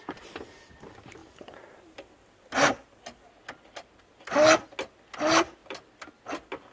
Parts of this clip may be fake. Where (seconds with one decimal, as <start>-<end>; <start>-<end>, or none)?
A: none